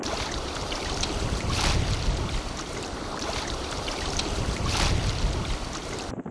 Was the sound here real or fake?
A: real